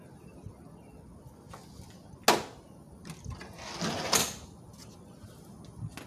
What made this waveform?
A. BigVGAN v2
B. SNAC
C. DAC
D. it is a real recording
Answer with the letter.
D